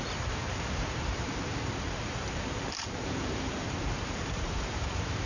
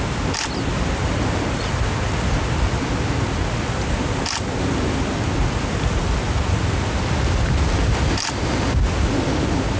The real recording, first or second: second